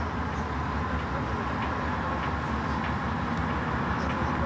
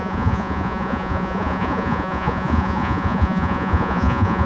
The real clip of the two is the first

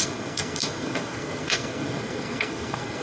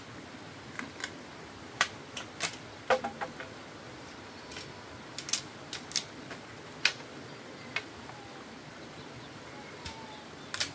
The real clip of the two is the second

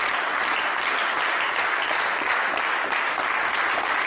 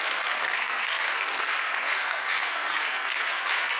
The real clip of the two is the first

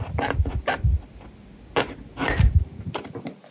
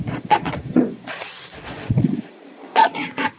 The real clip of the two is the first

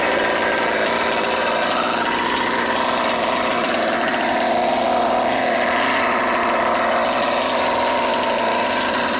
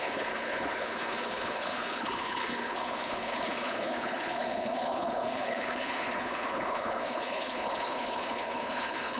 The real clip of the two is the first